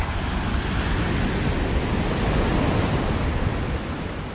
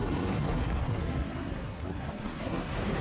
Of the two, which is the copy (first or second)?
second